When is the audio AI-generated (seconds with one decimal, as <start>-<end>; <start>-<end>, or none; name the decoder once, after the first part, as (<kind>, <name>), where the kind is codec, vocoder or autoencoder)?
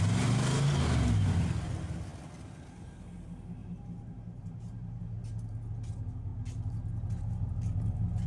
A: 3.6-5.0 (vocoder, BigVGAN v2)